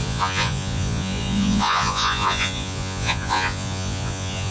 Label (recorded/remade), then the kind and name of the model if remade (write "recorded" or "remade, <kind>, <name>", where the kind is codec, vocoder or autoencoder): remade, vocoder, Vocos